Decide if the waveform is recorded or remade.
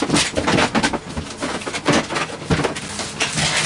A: recorded